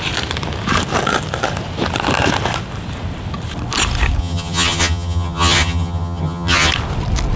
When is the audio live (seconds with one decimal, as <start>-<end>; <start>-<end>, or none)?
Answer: 0.0-4.2; 6.7-7.4